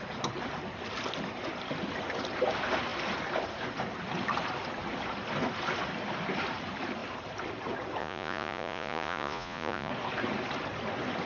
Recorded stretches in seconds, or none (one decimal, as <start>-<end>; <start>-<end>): 0.0-8.0; 9.9-11.3